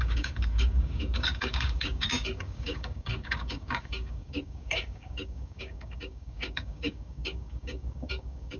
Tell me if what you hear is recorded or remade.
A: remade